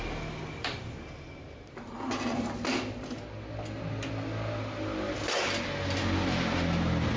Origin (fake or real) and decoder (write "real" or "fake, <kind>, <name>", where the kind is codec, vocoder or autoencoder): real